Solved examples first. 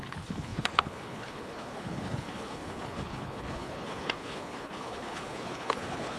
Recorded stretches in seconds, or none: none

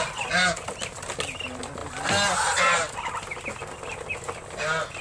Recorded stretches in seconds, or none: 0.0-5.0

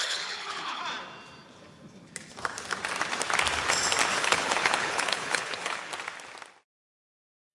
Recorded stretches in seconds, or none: 0.8-4.1; 5.9-7.5

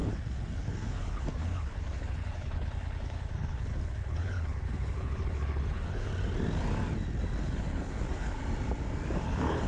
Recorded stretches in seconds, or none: 6.1-7.4; 8.4-9.2